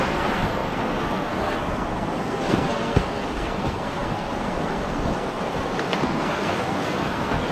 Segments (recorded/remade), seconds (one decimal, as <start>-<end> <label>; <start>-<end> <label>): 0.0-7.5 remade